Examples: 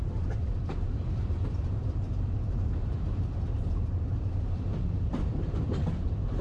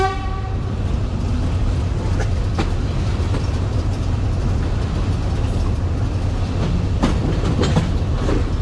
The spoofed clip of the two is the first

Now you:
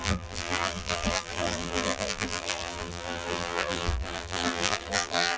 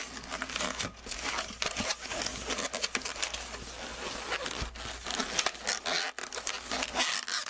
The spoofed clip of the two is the first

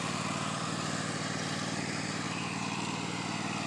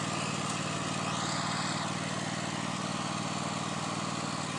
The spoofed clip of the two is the first